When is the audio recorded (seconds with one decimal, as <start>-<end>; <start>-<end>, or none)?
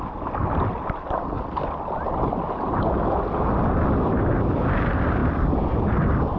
0.0-5.2; 5.8-6.4